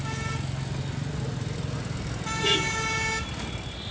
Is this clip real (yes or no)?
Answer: yes